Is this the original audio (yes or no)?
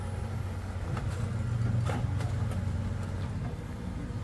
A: yes